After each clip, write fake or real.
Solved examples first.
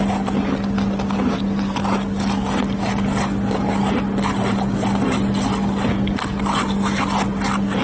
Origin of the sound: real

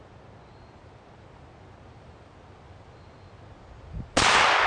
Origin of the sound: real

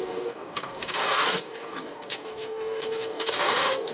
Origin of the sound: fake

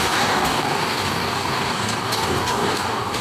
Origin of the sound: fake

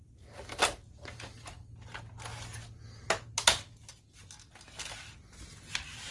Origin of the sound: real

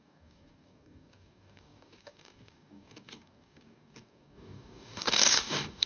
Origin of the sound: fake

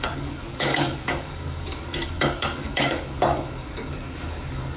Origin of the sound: fake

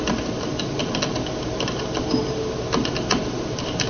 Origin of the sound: real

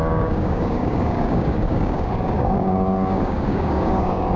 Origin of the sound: fake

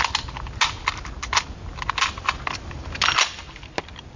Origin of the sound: real